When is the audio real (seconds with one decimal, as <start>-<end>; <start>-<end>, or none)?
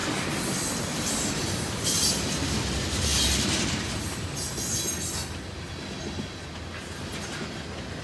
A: 2.0-8.0